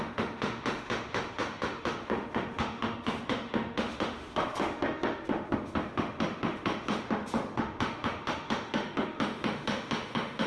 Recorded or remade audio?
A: remade